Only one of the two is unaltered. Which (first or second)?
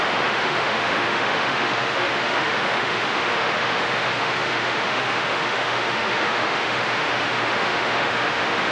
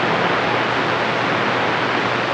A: second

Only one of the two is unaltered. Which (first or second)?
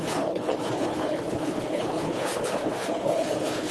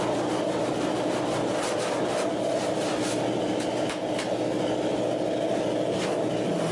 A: second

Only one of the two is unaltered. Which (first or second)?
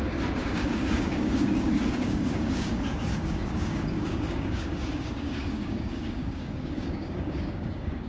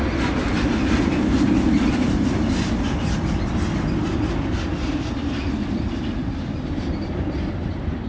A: second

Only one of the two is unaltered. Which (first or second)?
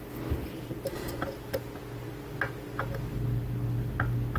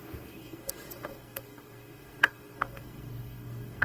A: first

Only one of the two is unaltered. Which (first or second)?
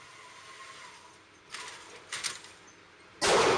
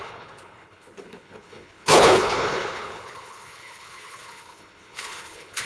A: first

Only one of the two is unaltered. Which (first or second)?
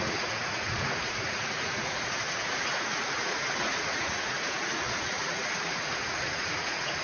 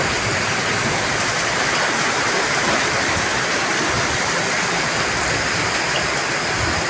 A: second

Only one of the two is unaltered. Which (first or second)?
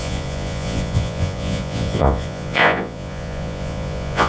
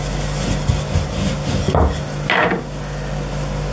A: second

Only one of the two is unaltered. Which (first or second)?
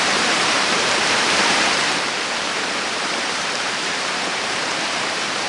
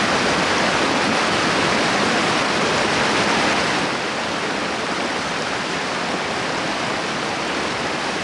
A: second